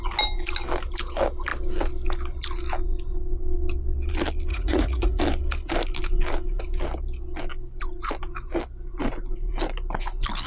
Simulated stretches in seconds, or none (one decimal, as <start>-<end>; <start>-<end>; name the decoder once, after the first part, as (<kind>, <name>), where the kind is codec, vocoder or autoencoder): 4.5-5.2 (vocoder, Vocos)

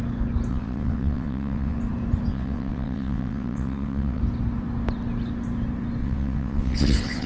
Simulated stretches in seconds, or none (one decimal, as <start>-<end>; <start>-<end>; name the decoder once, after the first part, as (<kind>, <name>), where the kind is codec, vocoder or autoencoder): 0.5-1.8 (vocoder, WaveNeXt); 2.3-4.2; 6.0-7.3